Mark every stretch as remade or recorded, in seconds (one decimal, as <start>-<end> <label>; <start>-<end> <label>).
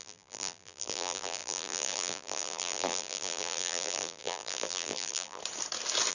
0.0-5.4 remade; 5.4-6.1 recorded